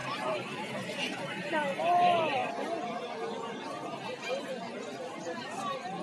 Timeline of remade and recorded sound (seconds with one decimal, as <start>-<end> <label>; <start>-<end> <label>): 0.0-6.0 recorded